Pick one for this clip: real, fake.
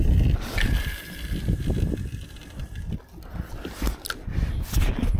real